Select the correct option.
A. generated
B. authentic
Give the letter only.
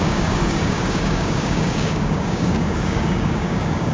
A